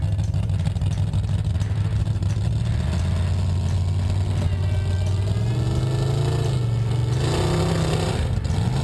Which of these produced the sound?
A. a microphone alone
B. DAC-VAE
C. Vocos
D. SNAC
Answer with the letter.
A